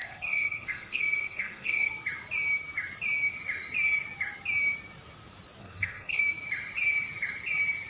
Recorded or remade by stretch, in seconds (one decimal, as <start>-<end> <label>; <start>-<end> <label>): 0.0-1.9 remade; 1.9-5.6 recorded; 5.6-6.2 remade; 6.2-7.9 recorded